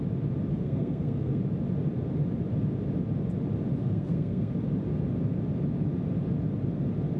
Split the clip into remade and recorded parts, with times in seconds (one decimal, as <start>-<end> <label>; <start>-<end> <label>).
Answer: 0.0-0.5 recorded; 0.5-1.4 remade; 1.4-3.8 recorded; 3.8-4.5 remade; 4.5-7.2 recorded